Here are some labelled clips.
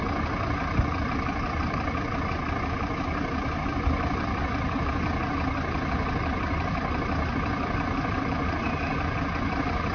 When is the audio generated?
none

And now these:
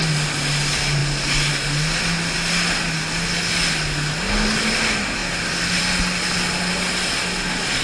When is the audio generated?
none

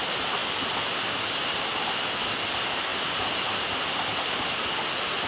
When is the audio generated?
none

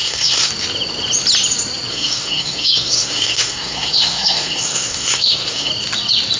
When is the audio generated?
0.0-0.5; 1.9-5.7

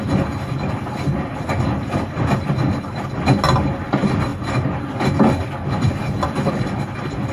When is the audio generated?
none

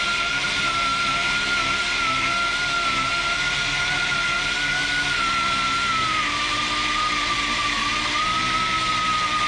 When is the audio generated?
none

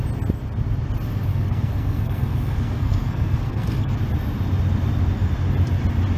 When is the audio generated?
1.3-4.0

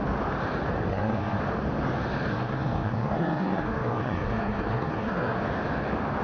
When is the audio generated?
0.9-1.4; 2.3-5.4